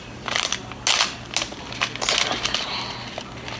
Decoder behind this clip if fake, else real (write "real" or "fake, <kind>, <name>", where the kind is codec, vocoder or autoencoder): real